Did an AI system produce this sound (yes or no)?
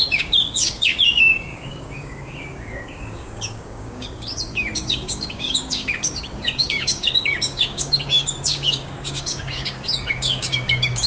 yes